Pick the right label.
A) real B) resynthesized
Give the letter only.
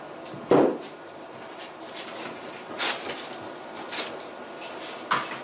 A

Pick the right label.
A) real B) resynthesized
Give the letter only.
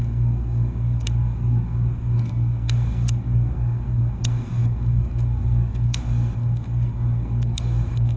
B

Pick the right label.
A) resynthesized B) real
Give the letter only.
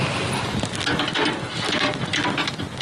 B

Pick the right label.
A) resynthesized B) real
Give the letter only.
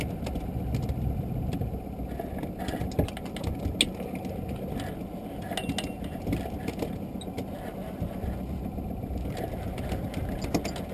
B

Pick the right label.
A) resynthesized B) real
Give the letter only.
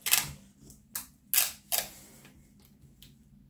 B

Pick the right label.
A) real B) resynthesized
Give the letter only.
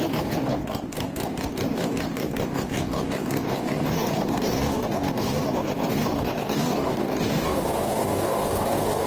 B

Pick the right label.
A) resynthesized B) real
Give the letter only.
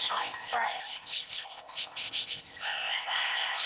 A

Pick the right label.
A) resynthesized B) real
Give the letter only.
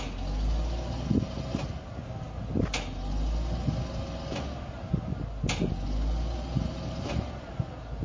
B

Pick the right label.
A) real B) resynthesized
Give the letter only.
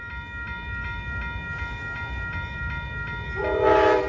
A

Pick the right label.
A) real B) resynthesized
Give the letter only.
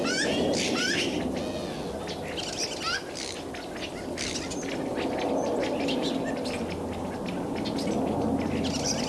A